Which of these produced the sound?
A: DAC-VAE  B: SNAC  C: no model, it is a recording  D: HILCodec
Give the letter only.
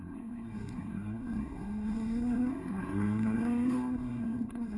B